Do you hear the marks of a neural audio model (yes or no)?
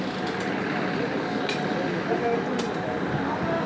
no